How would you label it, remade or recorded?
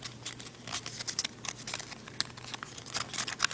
recorded